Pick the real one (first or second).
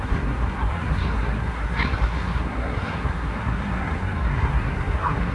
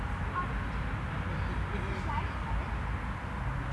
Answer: second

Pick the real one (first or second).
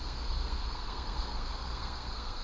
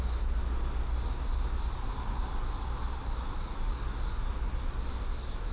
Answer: second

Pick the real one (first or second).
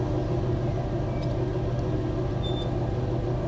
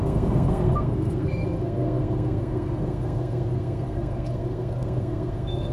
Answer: first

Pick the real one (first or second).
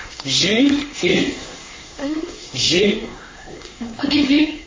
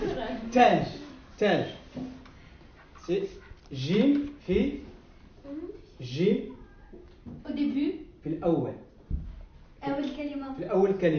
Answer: second